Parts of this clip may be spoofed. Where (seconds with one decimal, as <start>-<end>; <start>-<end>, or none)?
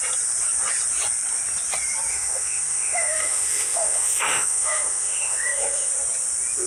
2.1-5.9